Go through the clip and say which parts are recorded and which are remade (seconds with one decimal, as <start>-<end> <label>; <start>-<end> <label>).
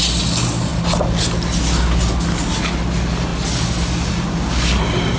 0.0-5.2 recorded